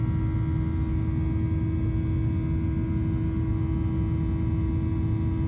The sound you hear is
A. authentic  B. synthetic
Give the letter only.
A